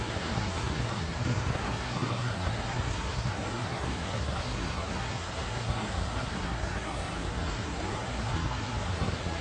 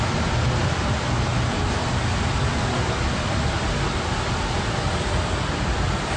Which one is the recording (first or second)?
second